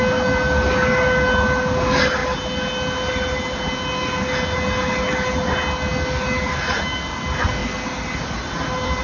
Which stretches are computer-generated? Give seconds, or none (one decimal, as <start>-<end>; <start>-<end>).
none